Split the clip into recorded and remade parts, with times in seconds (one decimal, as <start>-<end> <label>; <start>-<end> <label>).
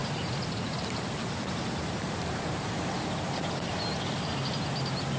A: 0.0-3.1 remade; 3.1-5.2 recorded